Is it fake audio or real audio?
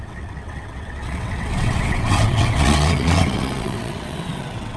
fake